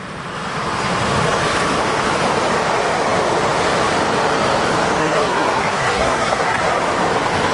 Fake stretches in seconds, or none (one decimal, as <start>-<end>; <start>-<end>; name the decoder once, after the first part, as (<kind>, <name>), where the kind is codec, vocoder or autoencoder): 5.0-6.6 (codec, SNAC)